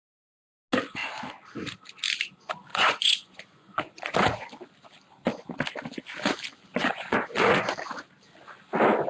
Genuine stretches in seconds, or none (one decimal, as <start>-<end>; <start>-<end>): 0.0-2.7; 4.0-6.8; 7.7-9.1